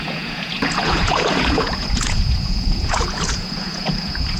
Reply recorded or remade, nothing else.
remade